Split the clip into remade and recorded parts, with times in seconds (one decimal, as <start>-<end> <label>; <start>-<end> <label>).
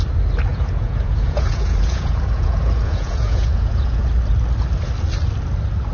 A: 0.0-0.5 recorded; 0.5-4.0 remade; 4.0-5.9 recorded